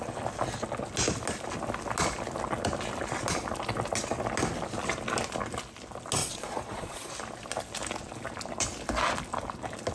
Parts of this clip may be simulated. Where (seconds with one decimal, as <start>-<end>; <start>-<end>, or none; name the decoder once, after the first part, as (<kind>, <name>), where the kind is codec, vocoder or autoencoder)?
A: 6.2-7.1 (vocoder, Vocos)